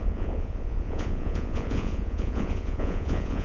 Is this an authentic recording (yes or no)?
no